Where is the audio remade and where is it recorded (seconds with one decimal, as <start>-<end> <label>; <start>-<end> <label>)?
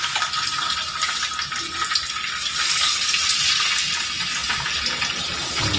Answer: 0.0-5.8 recorded